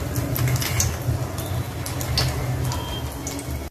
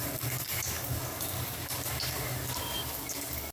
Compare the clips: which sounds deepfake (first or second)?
second